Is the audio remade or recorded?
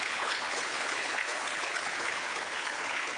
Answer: remade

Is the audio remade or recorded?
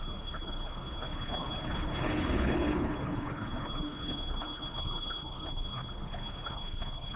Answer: remade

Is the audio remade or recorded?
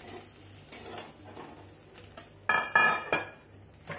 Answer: recorded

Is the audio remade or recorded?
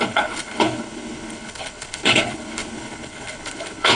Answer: remade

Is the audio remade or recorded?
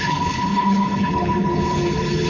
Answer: remade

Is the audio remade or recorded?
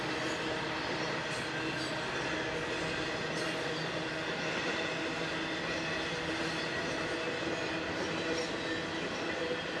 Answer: recorded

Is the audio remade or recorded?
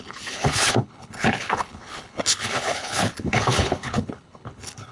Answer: remade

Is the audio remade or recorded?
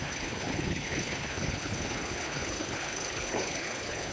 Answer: remade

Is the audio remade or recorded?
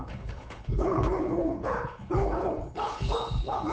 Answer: remade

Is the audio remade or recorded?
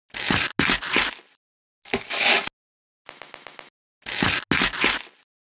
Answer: recorded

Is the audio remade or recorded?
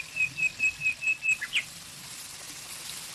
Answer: recorded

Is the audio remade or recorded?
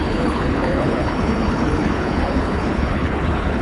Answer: remade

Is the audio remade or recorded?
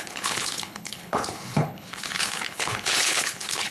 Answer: remade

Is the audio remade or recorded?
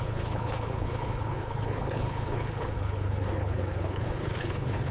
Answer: remade